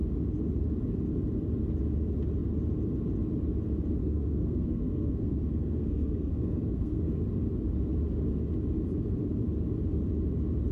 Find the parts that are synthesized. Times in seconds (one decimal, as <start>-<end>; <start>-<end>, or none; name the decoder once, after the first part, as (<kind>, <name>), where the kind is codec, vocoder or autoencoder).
4.0-7.2 (codec, SNAC)

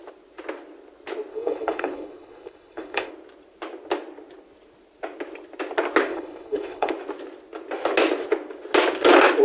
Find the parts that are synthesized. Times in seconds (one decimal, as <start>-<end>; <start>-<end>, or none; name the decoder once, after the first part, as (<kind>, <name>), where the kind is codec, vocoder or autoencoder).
1.3-3.1 (codec, HILCodec); 6.1-6.9

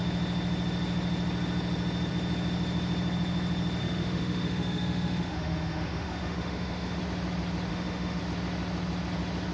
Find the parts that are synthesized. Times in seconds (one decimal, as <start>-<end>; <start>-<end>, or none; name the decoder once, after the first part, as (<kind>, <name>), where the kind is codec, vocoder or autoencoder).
3.8-7.0 (autoencoder, DAC-VAE); 7.7-8.2

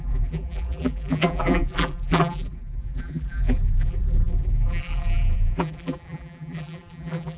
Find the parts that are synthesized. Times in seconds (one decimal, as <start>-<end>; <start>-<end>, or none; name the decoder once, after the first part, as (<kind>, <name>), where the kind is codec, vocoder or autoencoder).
0.0-7.4 (vocoder, BigVGAN v2)

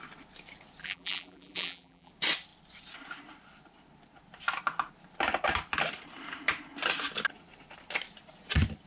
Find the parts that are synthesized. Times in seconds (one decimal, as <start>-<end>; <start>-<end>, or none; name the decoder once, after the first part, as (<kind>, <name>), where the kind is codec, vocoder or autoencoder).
0.8-2.1 (vocoder, BigVGAN v2)